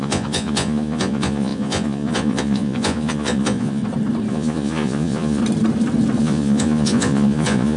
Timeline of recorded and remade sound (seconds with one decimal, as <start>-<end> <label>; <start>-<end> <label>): 0.0-3.8 remade; 3.8-4.3 recorded; 4.3-5.4 remade; 5.4-6.2 recorded; 6.2-7.8 remade